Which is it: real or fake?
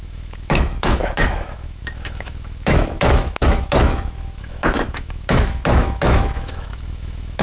fake